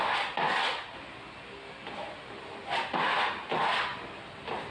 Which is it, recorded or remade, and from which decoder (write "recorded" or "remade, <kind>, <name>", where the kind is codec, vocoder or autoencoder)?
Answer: recorded